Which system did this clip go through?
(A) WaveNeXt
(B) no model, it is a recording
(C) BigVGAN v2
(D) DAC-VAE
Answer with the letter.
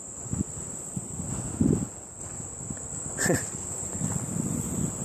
B